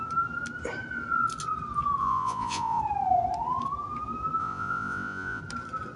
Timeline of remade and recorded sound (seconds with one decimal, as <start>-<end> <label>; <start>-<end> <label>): 0.0-2.0 recorded; 2.0-2.8 remade; 2.8-4.4 recorded; 4.4-5.4 remade; 5.4-6.0 recorded